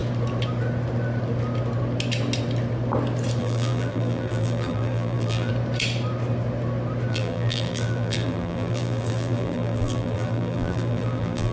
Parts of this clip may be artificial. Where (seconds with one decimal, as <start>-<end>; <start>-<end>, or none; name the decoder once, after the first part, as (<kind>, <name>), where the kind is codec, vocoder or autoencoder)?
3.4-5.5 (vocoder, BigVGAN v2); 7.1-11.5